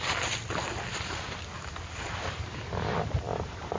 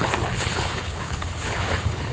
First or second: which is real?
first